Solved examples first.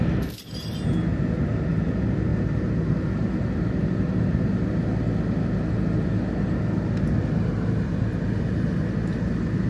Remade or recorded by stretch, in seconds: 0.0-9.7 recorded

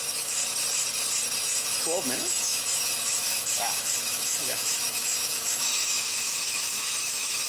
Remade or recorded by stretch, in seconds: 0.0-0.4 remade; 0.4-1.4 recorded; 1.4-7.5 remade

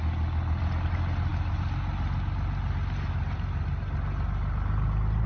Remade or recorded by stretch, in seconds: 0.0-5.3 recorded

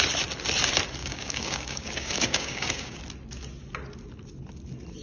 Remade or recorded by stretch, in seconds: 0.0-1.0 recorded; 1.0-3.0 remade; 3.0-5.0 recorded

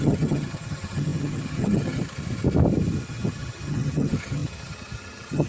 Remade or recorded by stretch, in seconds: 0.0-2.0 remade; 2.0-3.1 recorded; 3.1-5.5 remade

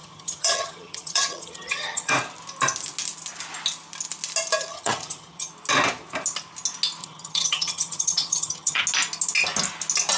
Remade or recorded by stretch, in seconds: 0.0-2.1 remade; 2.1-4.7 recorded; 4.7-5.5 remade; 5.5-7.0 recorded; 7.0-8.8 remade; 8.8-10.2 recorded